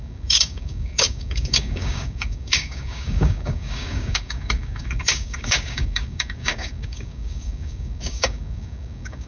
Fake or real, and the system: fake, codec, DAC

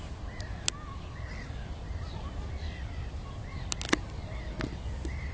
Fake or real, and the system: real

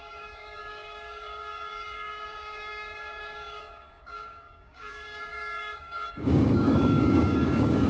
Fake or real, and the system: fake, codec, DAC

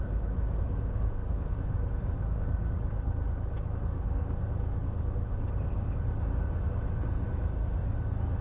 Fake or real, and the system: fake, codec, DAC